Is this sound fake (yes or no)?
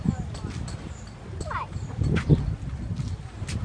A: no